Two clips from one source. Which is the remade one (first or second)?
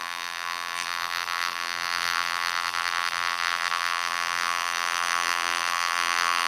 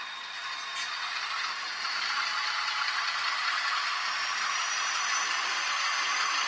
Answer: first